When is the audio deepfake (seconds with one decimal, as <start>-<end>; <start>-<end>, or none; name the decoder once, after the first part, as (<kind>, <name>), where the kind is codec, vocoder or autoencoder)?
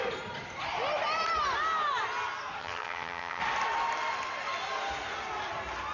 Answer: 2.6-3.4 (vocoder, HiFi-GAN)